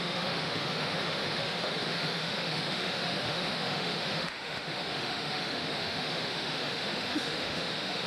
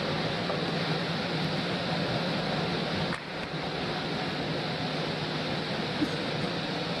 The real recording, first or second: second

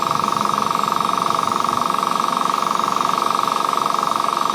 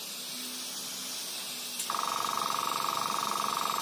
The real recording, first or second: second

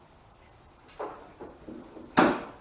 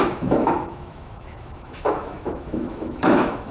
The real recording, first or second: first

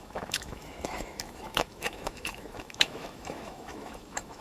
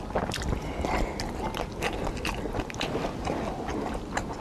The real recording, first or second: second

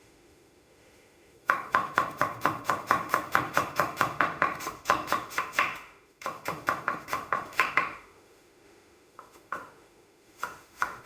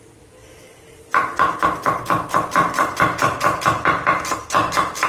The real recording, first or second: second